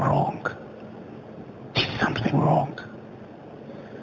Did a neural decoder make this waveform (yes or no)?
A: no